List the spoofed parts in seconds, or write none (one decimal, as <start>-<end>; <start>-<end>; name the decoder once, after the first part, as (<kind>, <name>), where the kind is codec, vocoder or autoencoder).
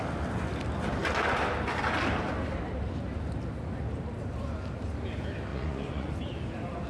5.5-6.1 (vocoder, Vocos)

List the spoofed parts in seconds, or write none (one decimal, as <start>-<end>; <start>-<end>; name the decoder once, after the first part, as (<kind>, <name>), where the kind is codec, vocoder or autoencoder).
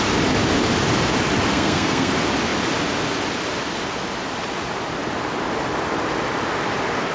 1.5-2.1 (codec, SNAC)